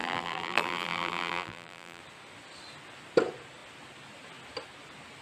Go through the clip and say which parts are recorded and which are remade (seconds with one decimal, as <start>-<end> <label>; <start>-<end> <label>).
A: 0.0-2.0 remade; 2.0-5.2 recorded